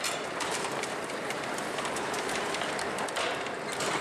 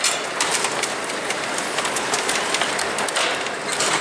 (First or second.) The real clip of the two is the second